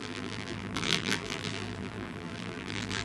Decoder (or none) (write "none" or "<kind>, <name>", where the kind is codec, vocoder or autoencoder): vocoder, BigVGAN v2